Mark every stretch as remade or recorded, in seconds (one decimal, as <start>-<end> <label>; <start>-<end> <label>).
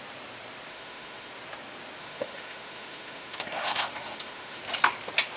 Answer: 0.0-0.7 recorded; 0.7-1.3 remade; 1.3-2.0 recorded; 2.0-4.6 remade; 4.6-5.4 recorded